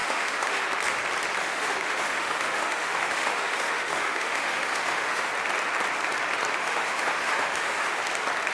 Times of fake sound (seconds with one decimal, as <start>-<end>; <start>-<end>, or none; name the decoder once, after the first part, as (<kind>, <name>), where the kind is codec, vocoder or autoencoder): 0.0-0.6 (autoencoder, DAC-VAE); 1.4-5.3; 6.6-8.0